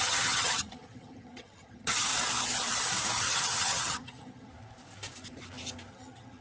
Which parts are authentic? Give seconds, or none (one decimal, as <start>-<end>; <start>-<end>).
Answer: 2.1-3.3; 4.5-5.9